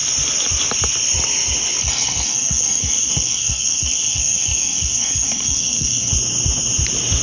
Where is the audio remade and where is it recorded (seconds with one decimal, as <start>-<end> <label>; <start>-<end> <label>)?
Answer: 0.0-1.8 recorded; 1.8-6.1 remade; 6.1-7.2 recorded